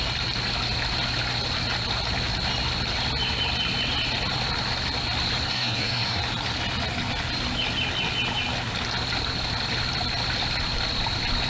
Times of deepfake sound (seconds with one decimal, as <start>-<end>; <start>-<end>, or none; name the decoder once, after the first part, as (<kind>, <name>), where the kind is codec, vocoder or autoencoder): 5.5-6.2 (codec, SNAC)